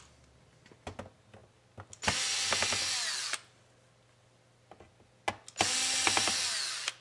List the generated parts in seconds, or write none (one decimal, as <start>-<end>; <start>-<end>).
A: none